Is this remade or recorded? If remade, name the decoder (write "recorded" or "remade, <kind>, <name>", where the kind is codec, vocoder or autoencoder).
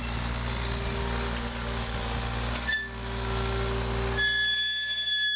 recorded